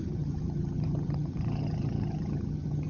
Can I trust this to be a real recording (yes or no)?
no